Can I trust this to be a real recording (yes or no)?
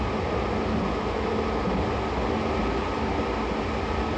yes